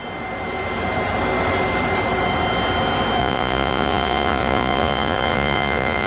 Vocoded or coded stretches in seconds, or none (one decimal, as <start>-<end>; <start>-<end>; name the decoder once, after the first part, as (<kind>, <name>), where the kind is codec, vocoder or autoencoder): 3.2-6.1 (vocoder, Vocos)